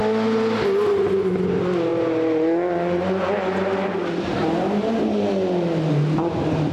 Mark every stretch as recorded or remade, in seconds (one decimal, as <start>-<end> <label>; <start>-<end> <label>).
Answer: 0.0-6.7 recorded